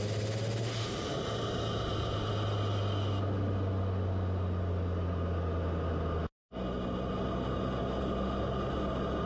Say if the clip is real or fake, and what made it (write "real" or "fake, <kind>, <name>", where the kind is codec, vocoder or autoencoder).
real